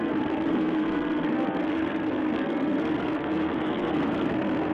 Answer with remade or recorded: remade